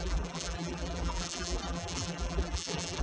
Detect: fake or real fake